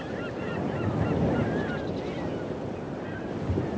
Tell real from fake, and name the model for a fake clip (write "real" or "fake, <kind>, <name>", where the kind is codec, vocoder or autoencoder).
real